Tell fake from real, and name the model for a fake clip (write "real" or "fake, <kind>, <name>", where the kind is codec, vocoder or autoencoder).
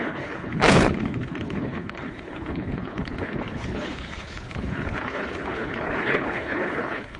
fake, codec, HILCodec